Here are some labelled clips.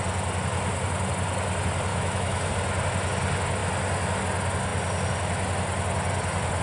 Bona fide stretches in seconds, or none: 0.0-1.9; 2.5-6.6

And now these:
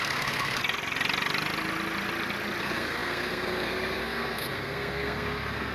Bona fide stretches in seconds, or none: 0.6-2.6

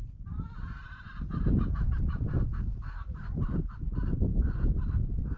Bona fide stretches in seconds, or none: 0.0-5.4

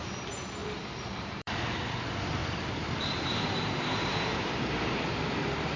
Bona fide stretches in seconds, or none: 0.0-0.6; 1.8-2.4; 5.0-5.8

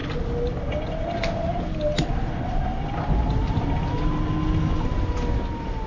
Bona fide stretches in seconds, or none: 0.0-5.9

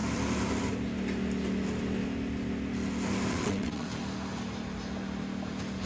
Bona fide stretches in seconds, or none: 0.0-3.3; 3.9-5.9